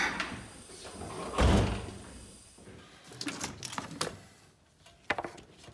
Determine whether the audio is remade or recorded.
recorded